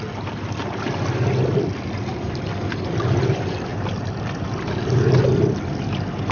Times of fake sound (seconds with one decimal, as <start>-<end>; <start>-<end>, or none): 0.6-2.8; 3.7-5.0